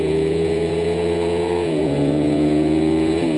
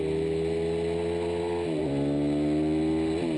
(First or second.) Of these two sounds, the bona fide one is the second